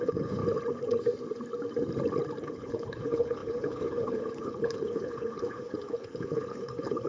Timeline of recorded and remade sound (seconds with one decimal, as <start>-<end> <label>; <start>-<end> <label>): 0.0-0.4 remade; 0.4-2.4 recorded; 2.4-7.1 remade